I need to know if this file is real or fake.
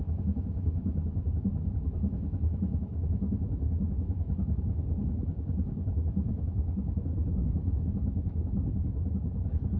fake